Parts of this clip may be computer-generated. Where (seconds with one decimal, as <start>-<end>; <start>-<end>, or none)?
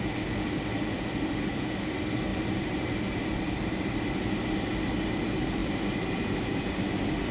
2.3-4.1